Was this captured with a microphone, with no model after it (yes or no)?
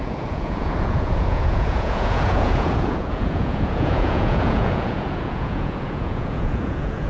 no